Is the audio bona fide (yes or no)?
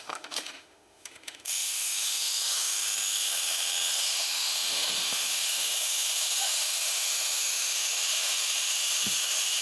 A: no